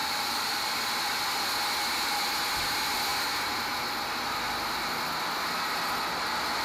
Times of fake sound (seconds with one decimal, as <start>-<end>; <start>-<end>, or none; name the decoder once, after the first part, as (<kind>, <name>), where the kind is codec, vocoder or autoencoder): 0.0-0.7 (vocoder, BigVGAN v2)